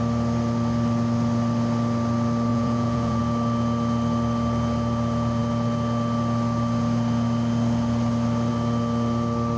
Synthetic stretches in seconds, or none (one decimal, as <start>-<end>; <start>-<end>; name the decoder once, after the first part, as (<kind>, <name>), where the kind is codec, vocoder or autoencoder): 2.5-3.2 (vocoder, Vocos)